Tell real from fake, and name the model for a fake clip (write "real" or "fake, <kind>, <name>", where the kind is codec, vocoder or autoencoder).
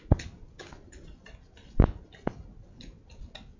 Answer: real